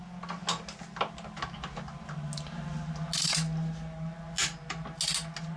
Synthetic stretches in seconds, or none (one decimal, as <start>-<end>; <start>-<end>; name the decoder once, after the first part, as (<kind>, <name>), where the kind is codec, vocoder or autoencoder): none